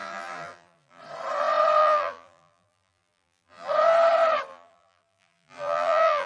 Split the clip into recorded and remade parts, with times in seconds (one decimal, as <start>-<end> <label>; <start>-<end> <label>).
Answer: 0.0-1.0 remade; 1.0-1.8 recorded; 1.8-3.7 remade; 3.7-4.5 recorded; 4.5-6.3 remade